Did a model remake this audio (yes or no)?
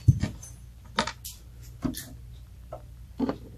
yes